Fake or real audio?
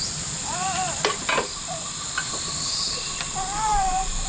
fake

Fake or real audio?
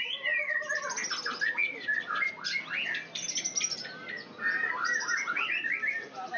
real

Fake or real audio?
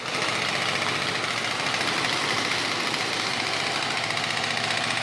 real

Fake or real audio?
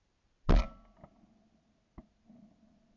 real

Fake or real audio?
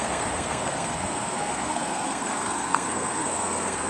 fake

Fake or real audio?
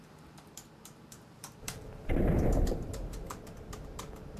fake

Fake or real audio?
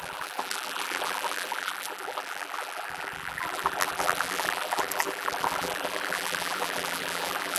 fake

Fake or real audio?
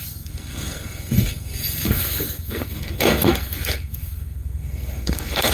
fake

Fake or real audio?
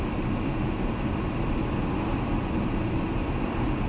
real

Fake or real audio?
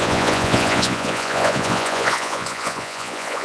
fake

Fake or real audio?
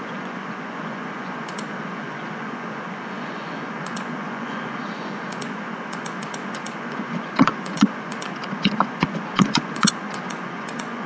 fake